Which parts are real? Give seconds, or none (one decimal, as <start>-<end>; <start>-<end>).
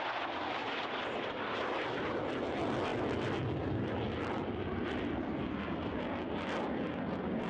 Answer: 0.0-7.5